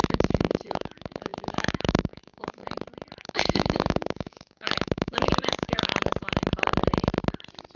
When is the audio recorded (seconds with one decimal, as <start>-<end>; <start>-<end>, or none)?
2.6-3.2; 5.9-7.8